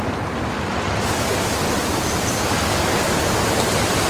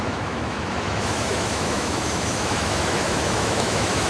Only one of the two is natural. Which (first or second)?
first